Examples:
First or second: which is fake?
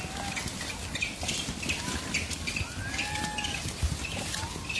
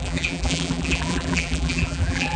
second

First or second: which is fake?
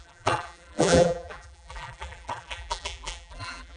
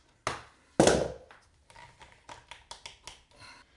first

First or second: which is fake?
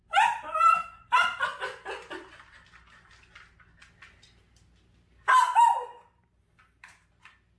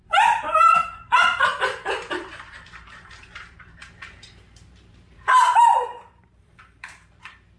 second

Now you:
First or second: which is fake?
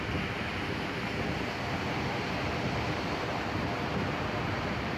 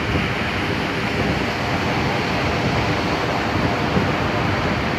first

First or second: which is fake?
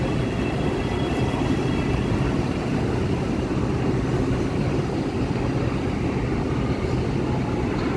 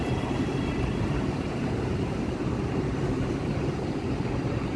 second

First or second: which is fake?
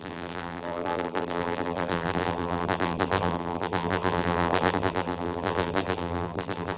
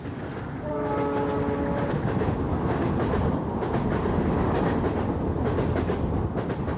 first